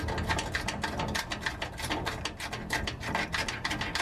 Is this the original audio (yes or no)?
yes